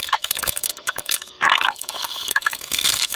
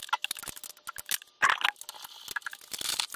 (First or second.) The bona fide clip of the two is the second